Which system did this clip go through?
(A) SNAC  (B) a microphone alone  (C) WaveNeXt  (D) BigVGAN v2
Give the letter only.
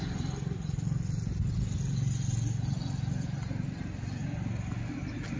B